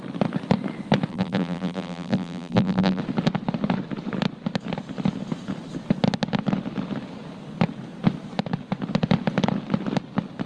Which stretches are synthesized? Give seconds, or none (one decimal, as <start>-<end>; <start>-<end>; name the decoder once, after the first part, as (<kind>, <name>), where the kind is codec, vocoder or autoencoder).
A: 1.1-3.0 (vocoder, BigVGAN v2)